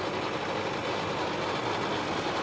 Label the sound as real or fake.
real